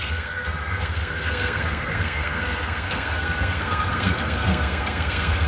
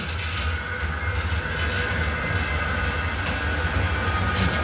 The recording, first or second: second